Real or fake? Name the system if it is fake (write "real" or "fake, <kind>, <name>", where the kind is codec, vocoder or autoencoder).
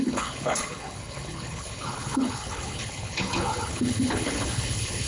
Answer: fake, codec, HILCodec